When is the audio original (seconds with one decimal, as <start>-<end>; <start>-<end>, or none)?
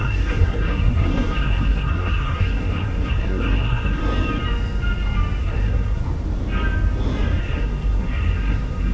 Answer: 4.0-5.4; 6.0-7.4